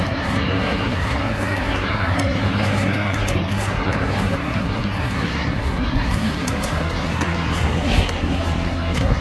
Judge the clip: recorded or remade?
remade